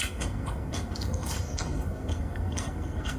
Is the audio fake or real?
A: fake